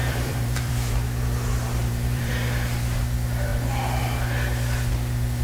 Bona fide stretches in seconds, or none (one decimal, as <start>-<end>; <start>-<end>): 0.9-1.8; 2.3-5.4